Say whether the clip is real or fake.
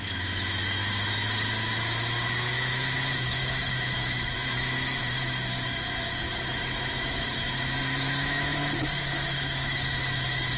fake